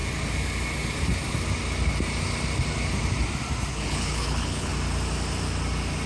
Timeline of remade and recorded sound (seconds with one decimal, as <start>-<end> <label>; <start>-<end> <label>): 0.0-3.7 recorded; 3.7-4.7 remade; 4.7-6.1 recorded